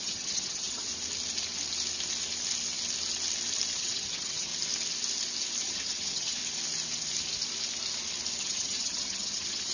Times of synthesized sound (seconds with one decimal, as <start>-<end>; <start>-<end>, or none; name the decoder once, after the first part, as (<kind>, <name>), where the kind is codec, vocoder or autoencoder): 0.0-0.9 (vocoder, HiFi-GAN); 3.8-4.5; 5.6-6.4; 8.4-9.7